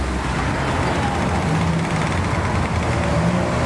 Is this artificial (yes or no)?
no